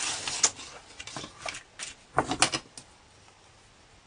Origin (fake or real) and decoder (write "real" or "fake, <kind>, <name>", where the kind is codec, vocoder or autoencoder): real